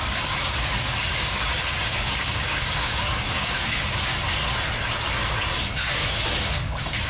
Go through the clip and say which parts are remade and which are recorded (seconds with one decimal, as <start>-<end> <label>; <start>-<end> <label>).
0.0-4.1 remade; 4.1-5.7 recorded; 5.7-7.1 remade